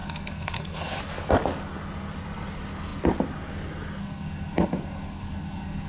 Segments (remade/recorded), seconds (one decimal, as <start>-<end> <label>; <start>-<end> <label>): 0.0-1.0 remade; 1.0-4.0 recorded; 4.0-5.9 remade